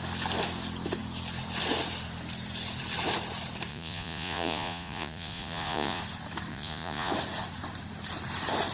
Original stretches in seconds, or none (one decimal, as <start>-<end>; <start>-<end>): 0.0-3.7; 6.0-6.5; 7.1-8.7